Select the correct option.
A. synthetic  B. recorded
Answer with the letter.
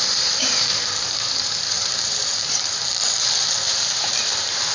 A